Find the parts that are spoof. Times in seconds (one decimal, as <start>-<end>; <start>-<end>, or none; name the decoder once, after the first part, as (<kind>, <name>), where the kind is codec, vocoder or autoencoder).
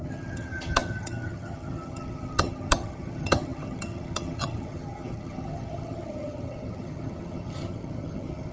0.0-8.5 (vocoder, HiFi-GAN)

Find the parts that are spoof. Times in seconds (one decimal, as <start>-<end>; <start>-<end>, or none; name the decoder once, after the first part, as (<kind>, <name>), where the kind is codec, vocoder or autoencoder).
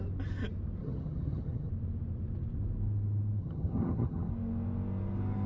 0.8-1.7 (vocoder, HiFi-GAN); 3.4-4.3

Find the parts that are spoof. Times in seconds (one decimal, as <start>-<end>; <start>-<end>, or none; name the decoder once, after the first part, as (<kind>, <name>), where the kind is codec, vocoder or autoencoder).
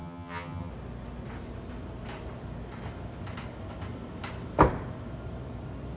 0.0-0.7 (vocoder, HiFi-GAN)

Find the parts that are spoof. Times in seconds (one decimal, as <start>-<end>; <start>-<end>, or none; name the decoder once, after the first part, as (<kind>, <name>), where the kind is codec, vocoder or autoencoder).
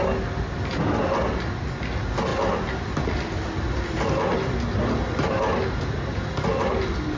none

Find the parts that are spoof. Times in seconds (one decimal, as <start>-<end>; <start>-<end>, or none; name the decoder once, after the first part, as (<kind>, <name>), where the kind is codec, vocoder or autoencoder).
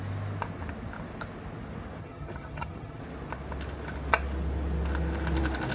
2.0-3.0 (vocoder, HiFi-GAN)